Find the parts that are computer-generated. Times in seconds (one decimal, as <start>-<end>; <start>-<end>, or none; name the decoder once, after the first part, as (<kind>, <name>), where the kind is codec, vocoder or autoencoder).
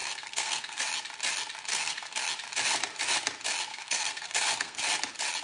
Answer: 0.0-0.8 (codec, SNAC); 1.7-2.2; 3.7-4.8